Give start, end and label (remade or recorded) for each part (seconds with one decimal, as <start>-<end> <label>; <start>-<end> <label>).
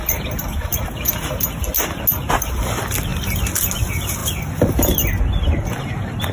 0.0-4.2 recorded; 4.2-4.7 remade; 4.7-6.3 recorded